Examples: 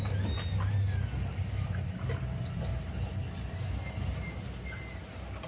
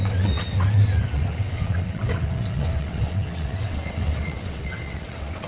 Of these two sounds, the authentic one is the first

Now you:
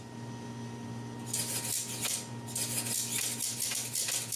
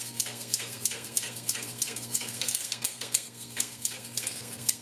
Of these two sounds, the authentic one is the first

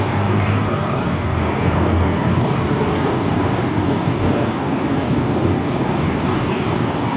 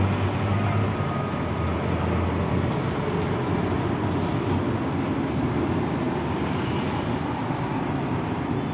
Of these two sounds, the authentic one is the second